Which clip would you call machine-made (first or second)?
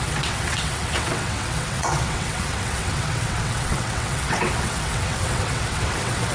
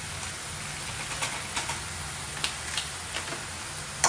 first